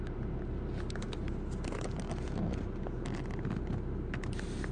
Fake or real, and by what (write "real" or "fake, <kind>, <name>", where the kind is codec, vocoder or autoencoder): real